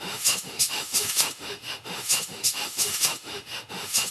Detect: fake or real fake